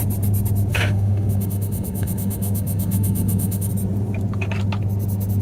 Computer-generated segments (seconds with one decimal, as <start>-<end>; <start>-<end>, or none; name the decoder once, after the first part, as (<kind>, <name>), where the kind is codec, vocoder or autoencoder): 0.7-3.7 (autoencoder, DAC-VAE)

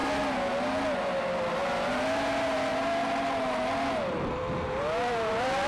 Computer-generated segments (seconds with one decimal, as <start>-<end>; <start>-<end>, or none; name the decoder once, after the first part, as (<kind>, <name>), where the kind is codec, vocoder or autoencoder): none

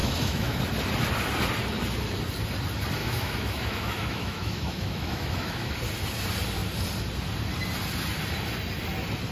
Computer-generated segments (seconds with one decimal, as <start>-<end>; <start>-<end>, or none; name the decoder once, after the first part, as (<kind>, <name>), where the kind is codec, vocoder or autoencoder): 0.0-0.6 (autoencoder, DAC-VAE); 3.0-5.7